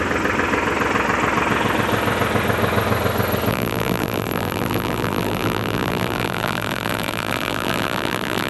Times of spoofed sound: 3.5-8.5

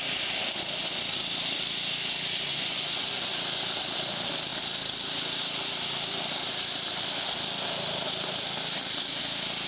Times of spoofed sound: 2.5-3.3